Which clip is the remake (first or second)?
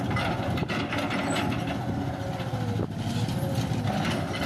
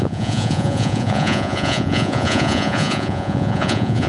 second